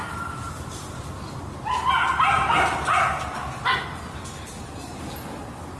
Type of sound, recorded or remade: recorded